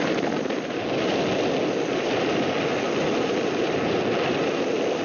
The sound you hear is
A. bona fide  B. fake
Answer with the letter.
A